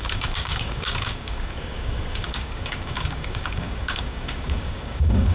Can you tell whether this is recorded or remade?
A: remade